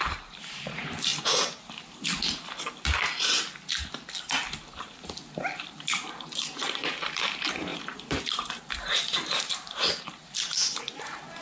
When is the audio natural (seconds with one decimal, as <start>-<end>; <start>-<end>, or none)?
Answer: 1.1-4.6